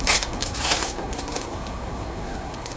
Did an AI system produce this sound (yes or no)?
yes